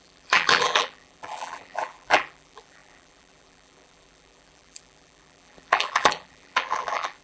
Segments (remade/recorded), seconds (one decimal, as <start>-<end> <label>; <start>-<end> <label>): 0.0-7.2 remade